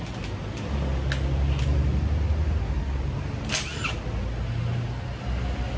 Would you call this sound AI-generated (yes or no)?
no